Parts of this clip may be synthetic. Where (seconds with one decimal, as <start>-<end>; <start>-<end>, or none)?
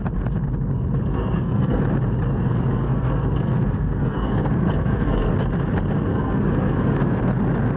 1.1-1.8; 2.3-5.3; 6.1-7.2